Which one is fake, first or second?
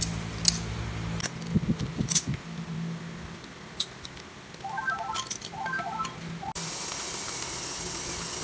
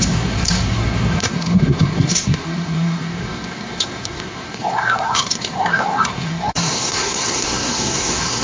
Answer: second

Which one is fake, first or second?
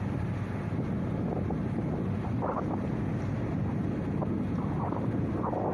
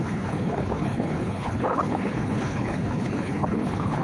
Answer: second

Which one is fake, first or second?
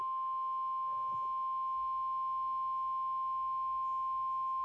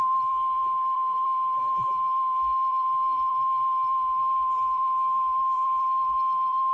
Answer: second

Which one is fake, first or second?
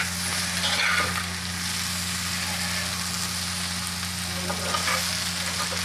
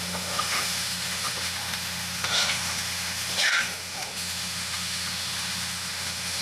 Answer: second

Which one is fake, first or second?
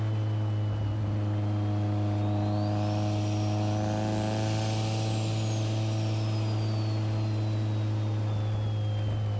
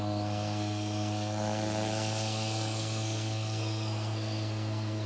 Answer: second